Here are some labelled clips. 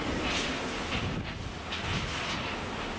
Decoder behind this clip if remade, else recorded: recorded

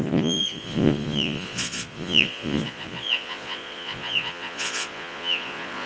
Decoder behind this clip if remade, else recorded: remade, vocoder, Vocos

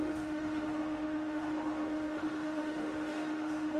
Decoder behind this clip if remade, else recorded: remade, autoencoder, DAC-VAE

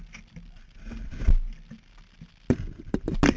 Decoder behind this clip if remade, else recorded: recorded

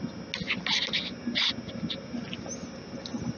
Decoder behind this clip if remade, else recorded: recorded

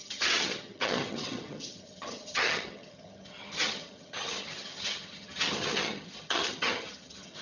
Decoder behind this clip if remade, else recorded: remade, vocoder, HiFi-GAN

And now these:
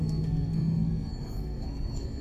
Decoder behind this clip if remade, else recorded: remade, codec, SNAC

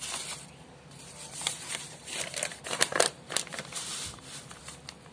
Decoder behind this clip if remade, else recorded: remade, vocoder, BigVGAN v2